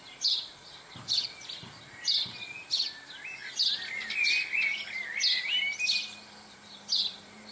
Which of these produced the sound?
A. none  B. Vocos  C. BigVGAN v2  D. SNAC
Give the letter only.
A